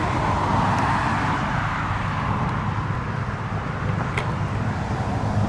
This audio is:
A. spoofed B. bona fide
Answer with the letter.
B